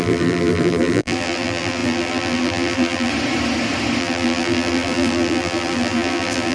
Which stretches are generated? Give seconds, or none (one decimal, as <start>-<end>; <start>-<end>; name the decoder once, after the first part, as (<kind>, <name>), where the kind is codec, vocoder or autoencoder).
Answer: 0.0-3.1 (vocoder, BigVGAN v2); 4.0-6.5